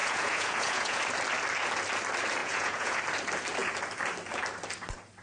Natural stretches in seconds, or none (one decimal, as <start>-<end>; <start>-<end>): 1.0-2.4; 3.0-5.2